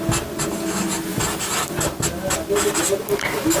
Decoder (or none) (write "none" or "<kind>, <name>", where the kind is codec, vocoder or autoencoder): none